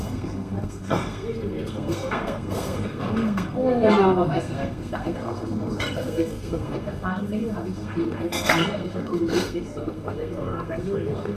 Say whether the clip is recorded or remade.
remade